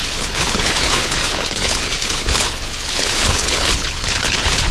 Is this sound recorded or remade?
remade